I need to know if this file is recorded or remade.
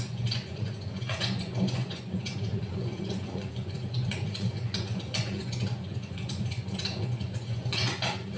remade